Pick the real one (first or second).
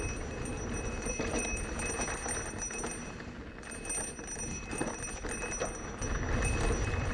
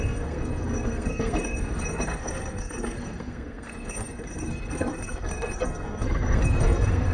first